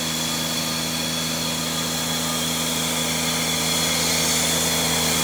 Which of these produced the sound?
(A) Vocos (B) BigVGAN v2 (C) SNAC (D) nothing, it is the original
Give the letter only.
D